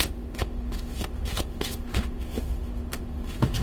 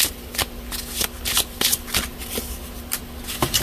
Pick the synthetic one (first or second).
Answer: first